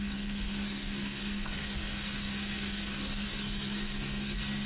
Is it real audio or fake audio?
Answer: fake